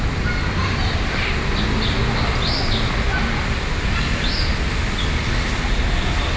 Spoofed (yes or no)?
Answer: no